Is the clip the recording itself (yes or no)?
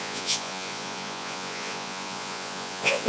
no